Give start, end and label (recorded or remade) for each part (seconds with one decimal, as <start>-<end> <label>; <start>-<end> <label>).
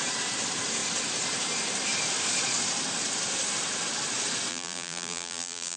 0.0-4.5 recorded; 4.5-5.8 remade